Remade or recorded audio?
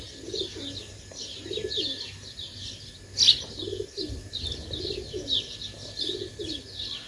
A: recorded